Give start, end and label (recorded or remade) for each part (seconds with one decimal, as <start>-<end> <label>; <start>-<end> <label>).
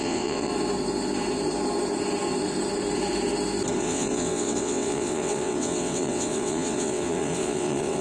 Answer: 0.0-0.5 remade; 0.5-3.8 recorded; 3.8-8.0 remade